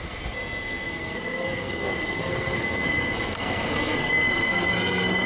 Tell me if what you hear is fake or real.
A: fake